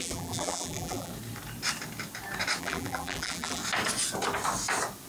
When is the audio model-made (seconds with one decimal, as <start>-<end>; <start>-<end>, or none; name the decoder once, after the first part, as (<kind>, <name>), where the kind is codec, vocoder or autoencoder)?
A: 0.0-1.1 (vocoder, BigVGAN v2); 2.6-3.6